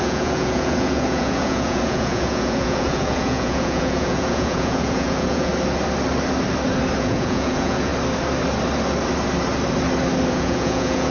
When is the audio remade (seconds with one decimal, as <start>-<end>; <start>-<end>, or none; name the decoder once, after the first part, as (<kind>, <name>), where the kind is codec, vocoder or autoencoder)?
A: 0.0-5.5 (vocoder, Vocos); 7.0-7.9; 10.3-11.1